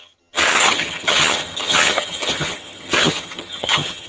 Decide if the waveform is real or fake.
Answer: fake